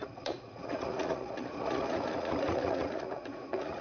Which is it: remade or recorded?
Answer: remade